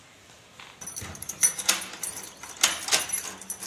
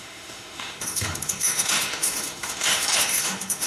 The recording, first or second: first